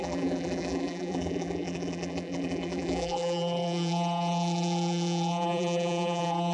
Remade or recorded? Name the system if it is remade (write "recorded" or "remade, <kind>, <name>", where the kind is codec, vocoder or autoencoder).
remade, vocoder, BigVGAN v2